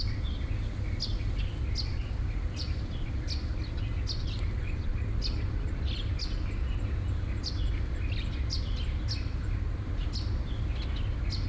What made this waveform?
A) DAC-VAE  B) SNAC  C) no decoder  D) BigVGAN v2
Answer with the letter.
C